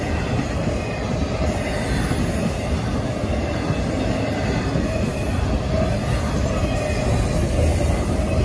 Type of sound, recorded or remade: recorded